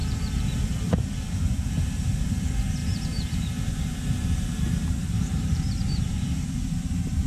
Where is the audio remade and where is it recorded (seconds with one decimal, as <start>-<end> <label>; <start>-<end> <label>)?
0.0-7.3 remade